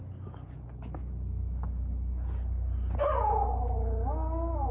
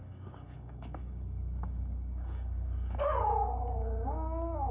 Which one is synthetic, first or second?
second